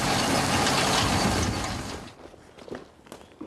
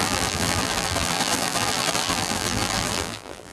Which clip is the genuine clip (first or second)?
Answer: first